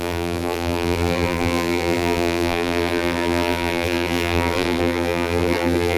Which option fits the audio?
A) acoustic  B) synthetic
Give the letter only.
B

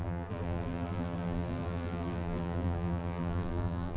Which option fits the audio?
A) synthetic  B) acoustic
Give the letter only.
A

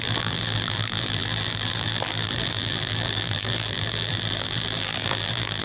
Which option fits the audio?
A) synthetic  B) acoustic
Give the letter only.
A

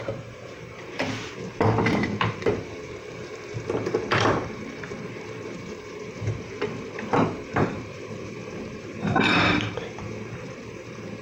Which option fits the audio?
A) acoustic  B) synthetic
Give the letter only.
B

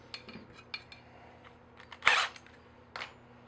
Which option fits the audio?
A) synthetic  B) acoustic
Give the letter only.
B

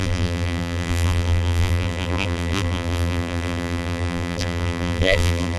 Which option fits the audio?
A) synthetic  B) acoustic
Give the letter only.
A